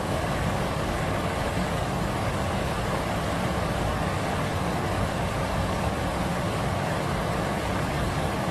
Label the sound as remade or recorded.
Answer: remade